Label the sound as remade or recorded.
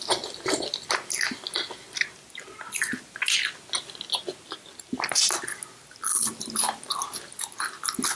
recorded